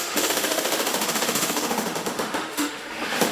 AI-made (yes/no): yes